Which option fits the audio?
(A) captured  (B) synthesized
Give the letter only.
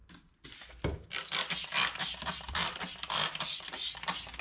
A